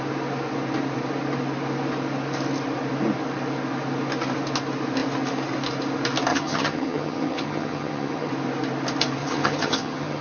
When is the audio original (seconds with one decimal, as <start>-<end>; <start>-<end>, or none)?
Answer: 0.0-6.3; 8.3-9.2